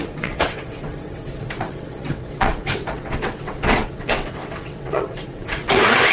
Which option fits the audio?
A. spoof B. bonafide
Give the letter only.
A